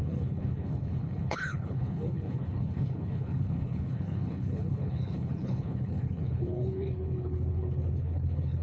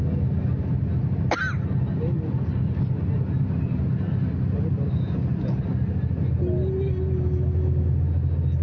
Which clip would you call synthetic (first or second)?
first